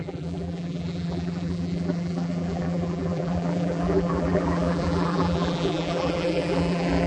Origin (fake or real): fake